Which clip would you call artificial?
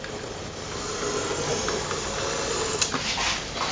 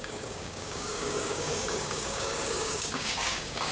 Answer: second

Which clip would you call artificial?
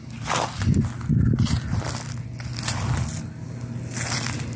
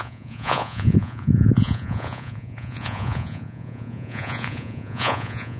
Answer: second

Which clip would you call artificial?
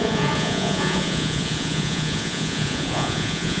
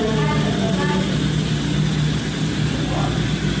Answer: first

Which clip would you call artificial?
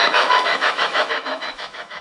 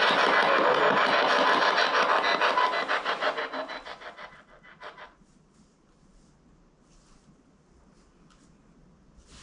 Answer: first